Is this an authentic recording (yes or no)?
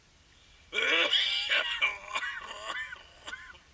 yes